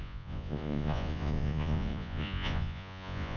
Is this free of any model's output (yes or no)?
no